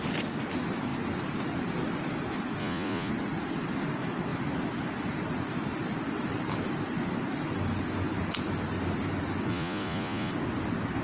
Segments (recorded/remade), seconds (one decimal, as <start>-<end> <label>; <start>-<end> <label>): 0.0-2.6 recorded; 2.6-3.1 remade; 3.1-9.5 recorded; 9.5-10.3 remade; 10.3-11.0 recorded